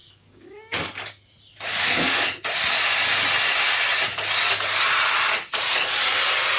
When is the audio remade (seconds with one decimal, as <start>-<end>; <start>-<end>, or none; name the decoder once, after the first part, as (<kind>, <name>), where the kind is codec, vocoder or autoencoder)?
0.0-1.2 (codec, DAC); 1.7-2.3